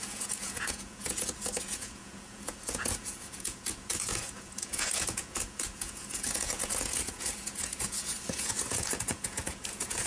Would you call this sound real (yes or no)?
no